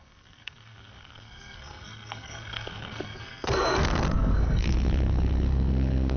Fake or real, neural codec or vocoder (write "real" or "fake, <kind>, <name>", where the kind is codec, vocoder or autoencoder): fake, codec, SNAC